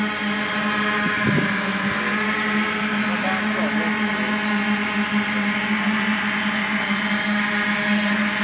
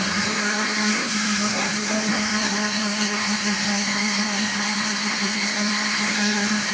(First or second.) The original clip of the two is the first